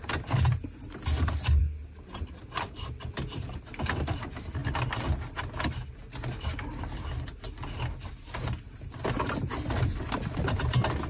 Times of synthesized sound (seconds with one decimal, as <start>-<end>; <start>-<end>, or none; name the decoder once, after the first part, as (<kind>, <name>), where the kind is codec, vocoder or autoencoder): 0.0-1.6 (vocoder, BigVGAN v2); 2.2-4.6; 6.8-11.1